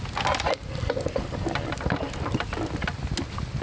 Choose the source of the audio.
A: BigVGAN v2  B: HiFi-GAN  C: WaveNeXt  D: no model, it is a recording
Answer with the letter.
D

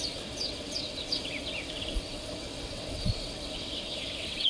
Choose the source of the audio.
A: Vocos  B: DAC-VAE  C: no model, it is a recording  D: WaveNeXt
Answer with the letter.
D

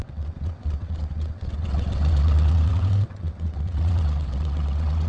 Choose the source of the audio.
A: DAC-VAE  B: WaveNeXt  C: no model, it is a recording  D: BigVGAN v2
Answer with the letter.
B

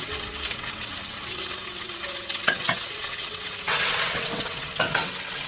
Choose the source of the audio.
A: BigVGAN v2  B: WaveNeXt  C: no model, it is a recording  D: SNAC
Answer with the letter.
B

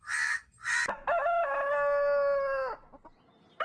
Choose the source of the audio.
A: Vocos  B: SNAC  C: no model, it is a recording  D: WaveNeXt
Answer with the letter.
C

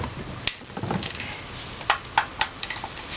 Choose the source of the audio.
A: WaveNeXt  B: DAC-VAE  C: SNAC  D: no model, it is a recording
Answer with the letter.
D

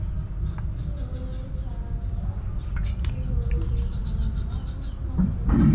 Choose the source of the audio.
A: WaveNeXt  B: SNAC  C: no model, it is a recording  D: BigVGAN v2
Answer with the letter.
C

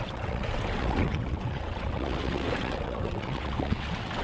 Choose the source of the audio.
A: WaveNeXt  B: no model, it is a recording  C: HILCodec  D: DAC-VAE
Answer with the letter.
A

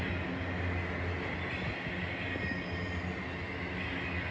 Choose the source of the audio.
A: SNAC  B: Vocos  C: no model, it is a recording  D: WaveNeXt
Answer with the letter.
C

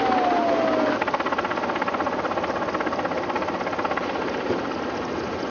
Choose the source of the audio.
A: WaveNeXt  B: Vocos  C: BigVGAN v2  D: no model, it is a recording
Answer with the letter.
D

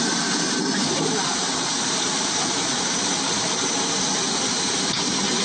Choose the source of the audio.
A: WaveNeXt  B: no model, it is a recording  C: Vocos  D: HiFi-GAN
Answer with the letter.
B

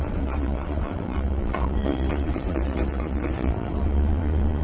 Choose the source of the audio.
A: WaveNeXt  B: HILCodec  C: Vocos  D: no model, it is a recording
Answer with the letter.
A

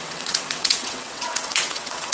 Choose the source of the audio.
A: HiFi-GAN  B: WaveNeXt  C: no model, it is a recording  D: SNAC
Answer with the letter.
B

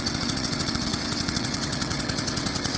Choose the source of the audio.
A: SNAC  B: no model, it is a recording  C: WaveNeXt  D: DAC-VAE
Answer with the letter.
C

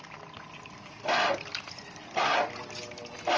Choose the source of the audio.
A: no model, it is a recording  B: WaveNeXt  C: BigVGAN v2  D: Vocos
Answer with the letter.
A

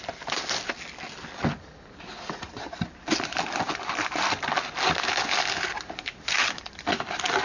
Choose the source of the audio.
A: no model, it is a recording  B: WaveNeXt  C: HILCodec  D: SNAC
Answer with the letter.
A